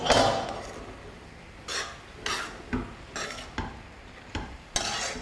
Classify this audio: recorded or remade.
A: recorded